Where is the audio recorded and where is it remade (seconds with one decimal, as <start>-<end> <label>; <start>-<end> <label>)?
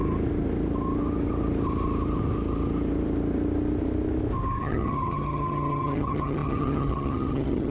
0.0-4.6 recorded; 4.6-7.7 remade